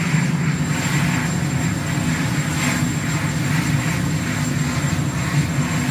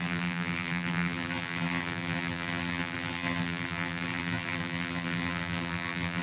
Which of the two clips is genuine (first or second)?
first